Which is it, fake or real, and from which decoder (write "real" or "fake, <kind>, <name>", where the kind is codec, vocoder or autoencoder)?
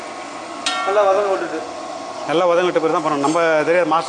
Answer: real